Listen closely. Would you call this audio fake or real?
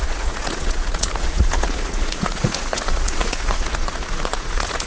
fake